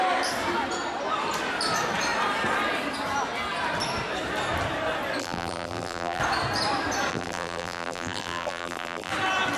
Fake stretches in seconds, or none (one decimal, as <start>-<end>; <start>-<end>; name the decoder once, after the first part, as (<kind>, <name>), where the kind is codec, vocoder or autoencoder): 5.2-6.2 (vocoder, BigVGAN v2); 7.1-9.1